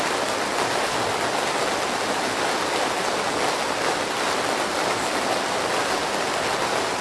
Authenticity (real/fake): real